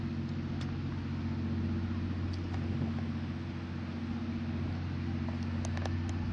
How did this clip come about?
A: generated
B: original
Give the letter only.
B